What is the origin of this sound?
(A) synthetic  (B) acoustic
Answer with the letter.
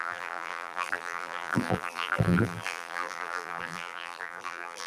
A